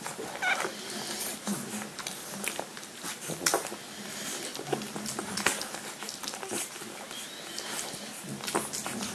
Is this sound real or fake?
real